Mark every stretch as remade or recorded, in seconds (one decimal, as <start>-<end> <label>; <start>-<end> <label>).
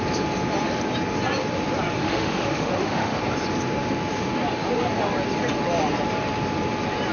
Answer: 0.0-2.0 recorded; 2.0-3.2 remade; 3.2-7.1 recorded